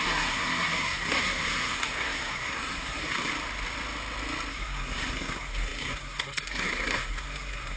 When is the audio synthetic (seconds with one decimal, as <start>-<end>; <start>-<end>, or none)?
0.0-3.3; 4.5-7.8